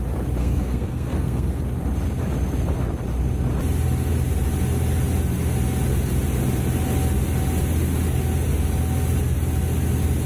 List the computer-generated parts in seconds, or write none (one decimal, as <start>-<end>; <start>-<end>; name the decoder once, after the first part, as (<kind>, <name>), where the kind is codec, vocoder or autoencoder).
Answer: 0.4-1.6 (codec, SNAC)